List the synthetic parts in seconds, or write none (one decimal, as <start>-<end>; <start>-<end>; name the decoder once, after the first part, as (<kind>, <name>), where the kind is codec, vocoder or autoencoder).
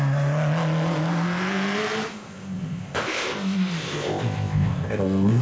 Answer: 2.1-5.4 (codec, ZipCodec)